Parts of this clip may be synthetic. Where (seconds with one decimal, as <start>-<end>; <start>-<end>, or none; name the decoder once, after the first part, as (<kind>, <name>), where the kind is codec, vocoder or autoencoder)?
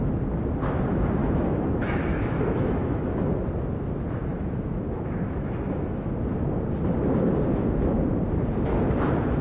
1.2-3.4 (autoencoder, DAC-VAE); 4.3-6.1